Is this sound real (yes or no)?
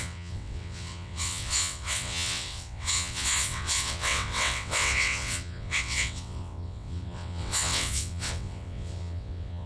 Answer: no